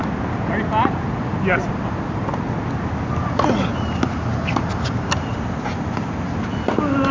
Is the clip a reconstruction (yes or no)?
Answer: no